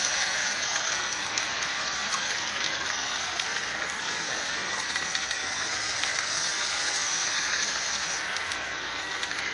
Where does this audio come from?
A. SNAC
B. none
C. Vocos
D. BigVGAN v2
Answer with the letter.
A